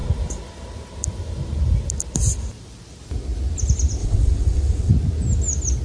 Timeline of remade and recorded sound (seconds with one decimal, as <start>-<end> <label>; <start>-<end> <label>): 0.0-4.0 recorded; 4.0-4.9 remade; 4.9-5.8 recorded